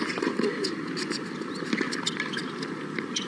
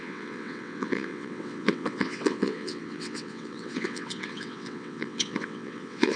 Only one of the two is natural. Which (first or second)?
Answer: first